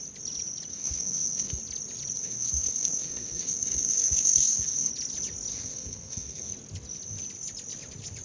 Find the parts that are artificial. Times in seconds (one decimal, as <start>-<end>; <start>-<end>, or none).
0.7-1.6; 2.2-4.9; 5.5-6.5